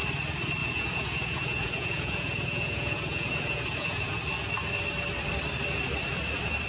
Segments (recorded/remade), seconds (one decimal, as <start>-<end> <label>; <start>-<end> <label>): 0.0-0.6 recorded; 0.6-4.2 remade; 4.2-6.7 recorded